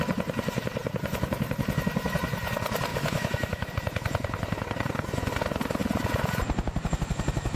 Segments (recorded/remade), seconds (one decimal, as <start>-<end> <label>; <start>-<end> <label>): 0.0-2.9 recorded; 2.9-3.7 remade; 3.7-7.6 recorded